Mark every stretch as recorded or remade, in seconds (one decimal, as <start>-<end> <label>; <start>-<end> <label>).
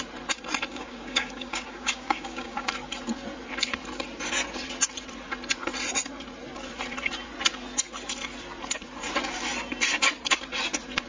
0.0-0.7 recorded; 0.7-2.7 remade; 2.7-11.1 recorded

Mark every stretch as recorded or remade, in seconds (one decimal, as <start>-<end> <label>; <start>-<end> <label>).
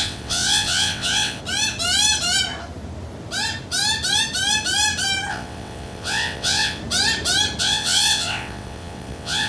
0.0-1.4 remade; 1.4-5.3 recorded; 5.3-6.8 remade; 6.8-7.6 recorded; 7.6-9.5 remade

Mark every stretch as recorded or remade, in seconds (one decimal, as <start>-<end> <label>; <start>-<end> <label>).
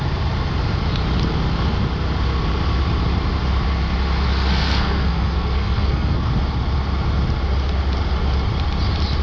0.0-4.5 recorded; 4.5-6.3 remade; 6.3-9.2 recorded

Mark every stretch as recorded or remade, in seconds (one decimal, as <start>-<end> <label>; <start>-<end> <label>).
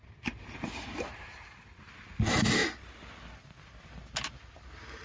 0.0-5.0 recorded